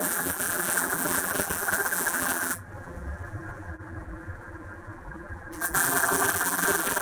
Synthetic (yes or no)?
yes